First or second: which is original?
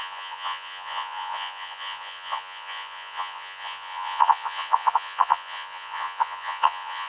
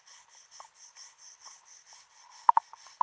second